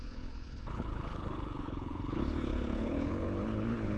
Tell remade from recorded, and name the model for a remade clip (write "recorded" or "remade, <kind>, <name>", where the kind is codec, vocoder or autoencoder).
remade, codec, HILCodec